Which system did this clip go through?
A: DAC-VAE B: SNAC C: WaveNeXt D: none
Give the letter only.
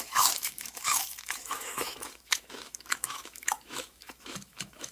A